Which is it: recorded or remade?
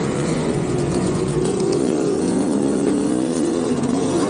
remade